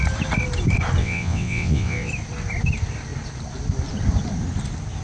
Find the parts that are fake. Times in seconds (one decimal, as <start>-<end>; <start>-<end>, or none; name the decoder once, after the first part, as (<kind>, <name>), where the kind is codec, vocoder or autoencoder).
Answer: 1.0-2.1 (vocoder, WaveNeXt)